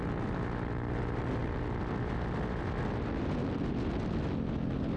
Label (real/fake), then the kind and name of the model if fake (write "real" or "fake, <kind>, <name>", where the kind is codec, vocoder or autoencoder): real